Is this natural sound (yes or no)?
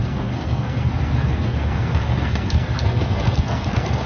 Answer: no